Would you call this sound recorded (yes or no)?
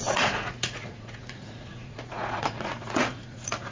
no